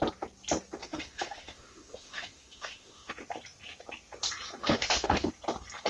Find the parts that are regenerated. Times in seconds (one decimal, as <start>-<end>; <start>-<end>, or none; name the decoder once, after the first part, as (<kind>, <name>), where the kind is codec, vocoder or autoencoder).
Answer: 0.8-3.1 (autoencoder, DAC-VAE); 4.6-5.3